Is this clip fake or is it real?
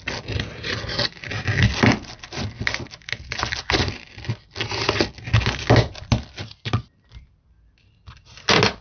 real